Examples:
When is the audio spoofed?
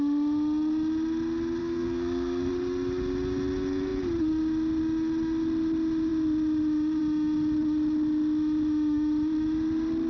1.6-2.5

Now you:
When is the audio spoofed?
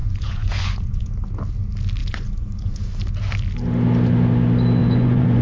0.0-1.1; 2.0-3.0; 4.8-5.4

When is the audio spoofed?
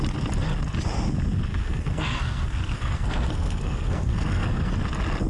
1.5-4.7